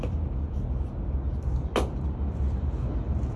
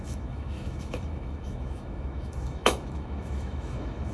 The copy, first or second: second